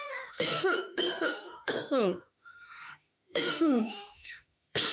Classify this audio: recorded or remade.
remade